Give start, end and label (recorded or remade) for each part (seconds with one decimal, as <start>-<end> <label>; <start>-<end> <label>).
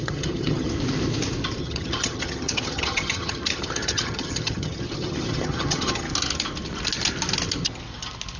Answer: 0.0-0.7 remade; 0.7-1.6 recorded; 1.6-6.1 remade; 6.1-8.4 recorded